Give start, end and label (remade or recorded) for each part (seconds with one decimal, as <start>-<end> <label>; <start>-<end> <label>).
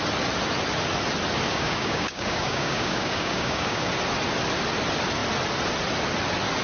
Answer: 0.0-1.5 recorded; 1.5-3.9 remade; 3.9-6.6 recorded